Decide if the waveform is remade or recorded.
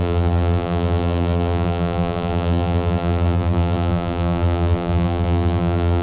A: remade